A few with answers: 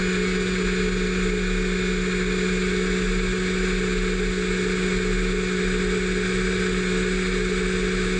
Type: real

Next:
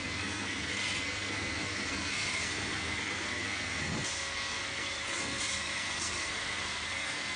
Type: fake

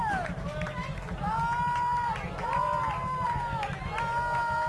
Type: real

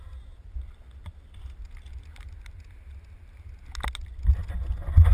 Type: real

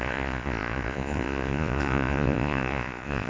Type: fake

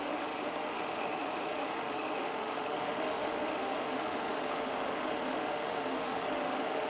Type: fake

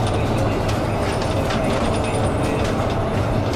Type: real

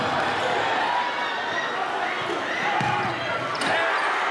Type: real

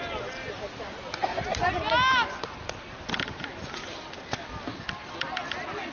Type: real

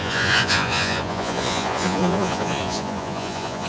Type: fake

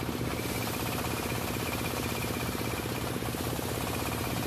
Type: real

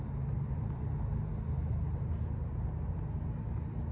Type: real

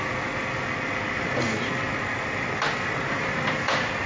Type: real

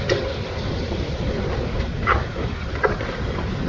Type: real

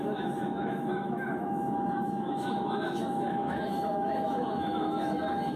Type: fake